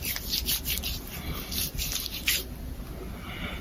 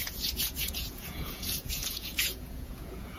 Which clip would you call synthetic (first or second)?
second